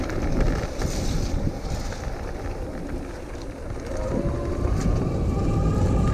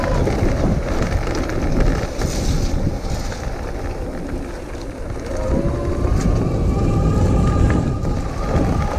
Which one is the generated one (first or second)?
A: first